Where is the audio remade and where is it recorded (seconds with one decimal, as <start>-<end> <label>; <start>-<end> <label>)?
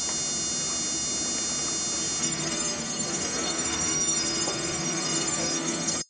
0.0-2.2 recorded; 2.2-6.1 remade